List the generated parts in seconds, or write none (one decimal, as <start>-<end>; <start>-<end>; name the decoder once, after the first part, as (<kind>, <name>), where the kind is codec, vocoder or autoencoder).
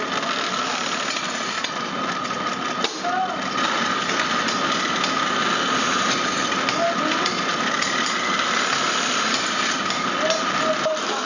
none